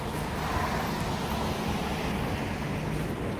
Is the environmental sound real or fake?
real